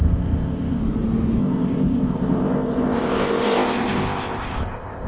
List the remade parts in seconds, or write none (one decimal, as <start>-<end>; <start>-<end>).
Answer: 0.0-0.8; 1.4-5.1